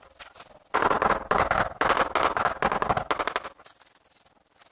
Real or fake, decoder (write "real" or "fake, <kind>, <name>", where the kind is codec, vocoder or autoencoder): real